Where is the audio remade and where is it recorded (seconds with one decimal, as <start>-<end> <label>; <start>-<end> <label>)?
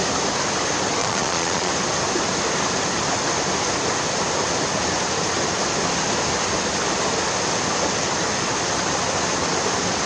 0.0-1.0 recorded; 1.0-1.7 remade; 1.7-10.1 recorded